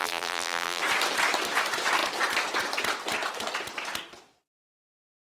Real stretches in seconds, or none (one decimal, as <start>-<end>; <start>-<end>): 0.8-5.2